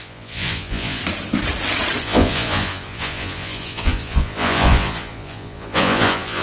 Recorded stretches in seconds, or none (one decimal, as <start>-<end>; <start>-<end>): 1.0-2.0